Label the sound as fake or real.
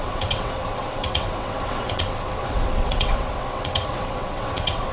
fake